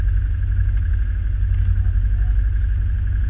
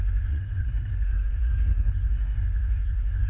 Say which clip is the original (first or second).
first